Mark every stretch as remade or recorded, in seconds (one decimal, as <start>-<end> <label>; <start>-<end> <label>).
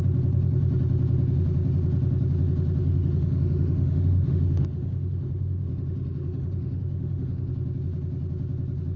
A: 0.0-2.8 recorded; 2.8-7.5 remade; 7.5-9.0 recorded